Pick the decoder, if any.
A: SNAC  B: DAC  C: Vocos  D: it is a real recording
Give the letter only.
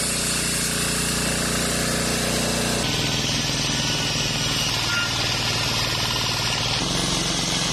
D